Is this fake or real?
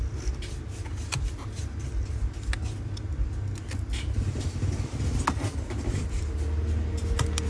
real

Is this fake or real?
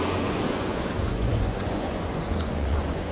fake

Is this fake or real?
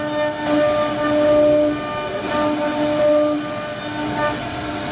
real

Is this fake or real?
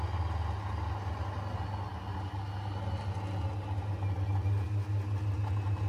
real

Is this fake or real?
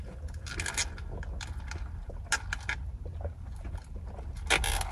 real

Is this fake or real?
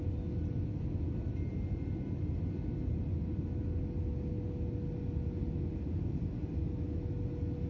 real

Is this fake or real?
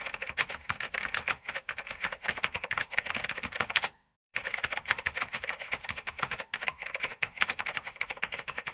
fake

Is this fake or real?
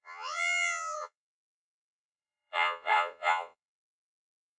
fake